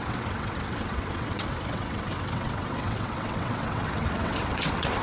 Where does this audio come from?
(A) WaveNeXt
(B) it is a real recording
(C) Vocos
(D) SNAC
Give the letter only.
A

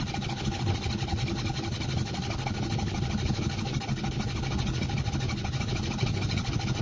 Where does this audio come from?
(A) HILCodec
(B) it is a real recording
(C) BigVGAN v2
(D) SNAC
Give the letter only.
B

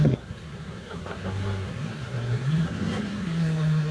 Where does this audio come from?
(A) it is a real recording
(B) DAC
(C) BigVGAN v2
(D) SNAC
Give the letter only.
D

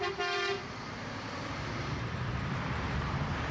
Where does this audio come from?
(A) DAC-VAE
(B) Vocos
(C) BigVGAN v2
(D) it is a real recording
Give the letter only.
C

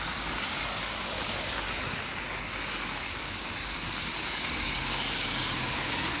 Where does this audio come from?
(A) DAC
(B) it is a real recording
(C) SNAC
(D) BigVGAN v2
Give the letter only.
A